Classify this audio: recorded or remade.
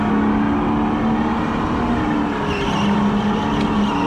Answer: recorded